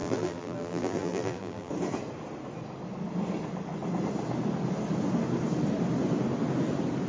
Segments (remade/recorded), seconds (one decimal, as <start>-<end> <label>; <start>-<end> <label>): 0.0-1.7 remade; 1.7-7.1 recorded